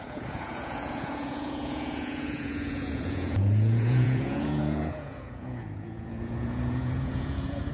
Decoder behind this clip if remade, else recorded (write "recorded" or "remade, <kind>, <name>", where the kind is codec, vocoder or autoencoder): remade, vocoder, Vocos